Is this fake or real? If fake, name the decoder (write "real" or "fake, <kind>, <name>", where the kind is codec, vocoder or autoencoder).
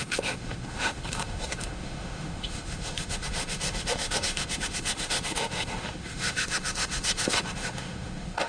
fake, autoencoder, DAC-VAE